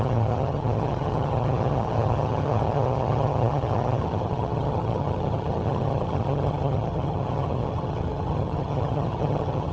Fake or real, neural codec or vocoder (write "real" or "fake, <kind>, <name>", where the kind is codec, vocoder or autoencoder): fake, vocoder, HiFi-GAN